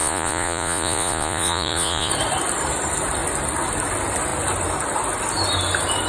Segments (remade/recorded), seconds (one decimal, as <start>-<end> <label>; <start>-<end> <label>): 0.0-2.1 remade; 2.1-6.1 recorded